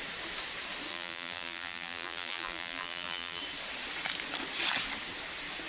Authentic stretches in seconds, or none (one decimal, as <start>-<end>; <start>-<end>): 0.0-0.9; 3.4-5.7